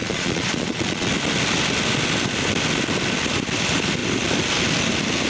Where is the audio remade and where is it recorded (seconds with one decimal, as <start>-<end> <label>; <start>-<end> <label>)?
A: 0.0-1.1 remade; 1.1-5.3 recorded